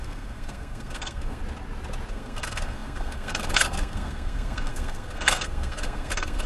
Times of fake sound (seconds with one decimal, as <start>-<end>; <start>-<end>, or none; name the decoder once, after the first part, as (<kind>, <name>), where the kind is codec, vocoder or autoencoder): 0.0-1.4 (codec, SNAC); 2.1-6.5